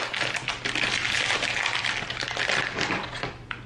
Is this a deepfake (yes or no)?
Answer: no